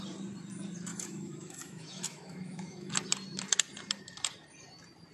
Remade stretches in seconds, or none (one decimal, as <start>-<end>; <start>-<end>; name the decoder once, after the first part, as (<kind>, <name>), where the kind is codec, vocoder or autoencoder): 0.9-2.9 (autoencoder, DAC-VAE)